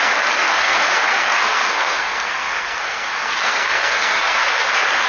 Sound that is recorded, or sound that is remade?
remade